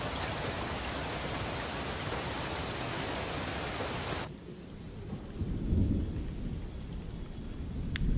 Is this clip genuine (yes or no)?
yes